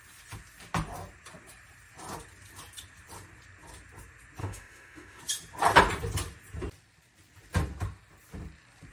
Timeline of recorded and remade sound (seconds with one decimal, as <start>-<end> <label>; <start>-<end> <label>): 0.0-4.4 recorded; 4.4-5.2 remade; 5.2-8.9 recorded